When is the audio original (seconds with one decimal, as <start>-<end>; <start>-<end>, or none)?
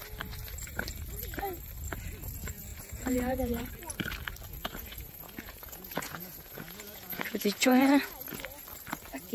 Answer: 0.0-2.7; 3.7-4.6; 8.1-9.3